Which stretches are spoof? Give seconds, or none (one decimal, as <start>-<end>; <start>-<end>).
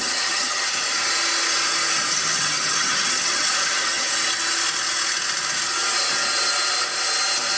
0.0-0.6; 2.1-4.1